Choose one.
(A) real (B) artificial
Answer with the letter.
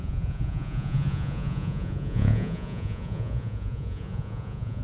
B